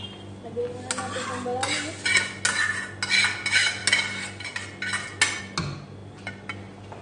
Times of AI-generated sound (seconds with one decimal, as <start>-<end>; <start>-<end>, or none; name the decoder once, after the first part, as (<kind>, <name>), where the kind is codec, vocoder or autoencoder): none